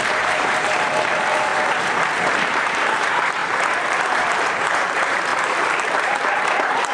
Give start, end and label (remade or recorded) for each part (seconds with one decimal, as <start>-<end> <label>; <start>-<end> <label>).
0.0-3.4 remade; 3.4-4.2 recorded; 4.2-6.9 remade